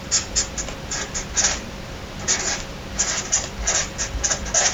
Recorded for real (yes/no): yes